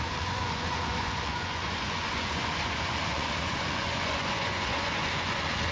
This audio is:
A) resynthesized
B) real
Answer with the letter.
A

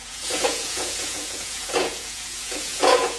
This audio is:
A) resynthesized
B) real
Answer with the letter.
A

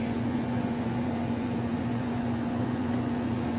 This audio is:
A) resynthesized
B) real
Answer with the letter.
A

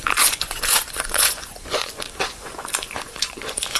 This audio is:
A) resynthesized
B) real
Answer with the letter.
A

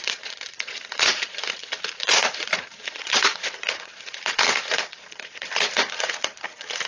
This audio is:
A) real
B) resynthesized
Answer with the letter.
B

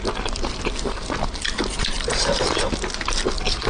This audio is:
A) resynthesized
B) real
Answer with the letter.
B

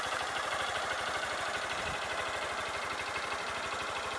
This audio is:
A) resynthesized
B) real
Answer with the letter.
B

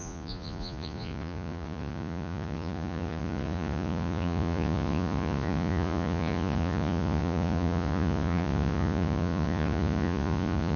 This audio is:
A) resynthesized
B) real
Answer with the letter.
A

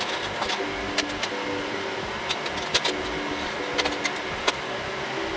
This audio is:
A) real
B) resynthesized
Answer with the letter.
A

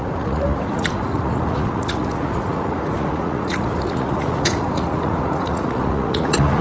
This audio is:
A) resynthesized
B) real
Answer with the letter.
A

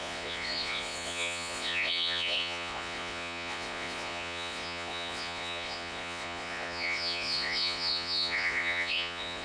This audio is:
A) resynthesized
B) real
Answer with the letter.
A